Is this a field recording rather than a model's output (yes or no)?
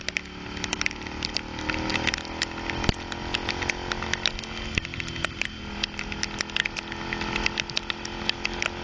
yes